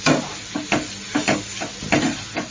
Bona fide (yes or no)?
yes